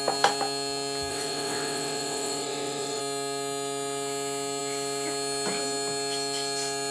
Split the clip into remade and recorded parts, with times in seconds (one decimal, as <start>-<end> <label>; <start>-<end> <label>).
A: 0.0-1.1 recorded; 1.1-3.0 remade; 3.0-6.9 recorded